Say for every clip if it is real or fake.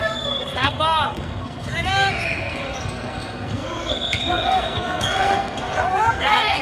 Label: fake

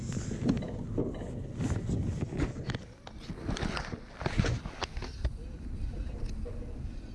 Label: real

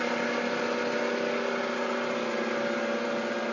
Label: real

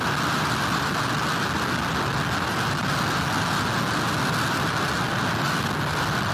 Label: real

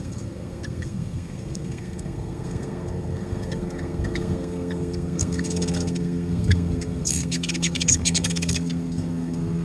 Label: fake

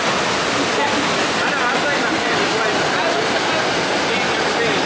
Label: real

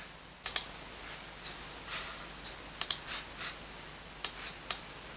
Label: real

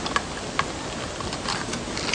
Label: real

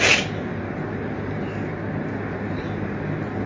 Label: real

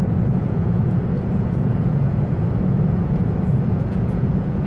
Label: fake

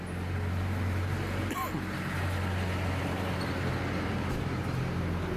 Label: real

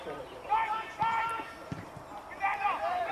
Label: fake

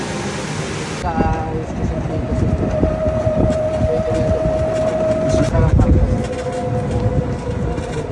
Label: real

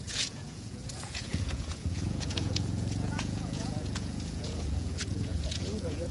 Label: fake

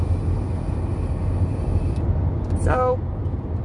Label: real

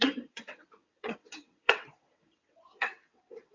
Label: fake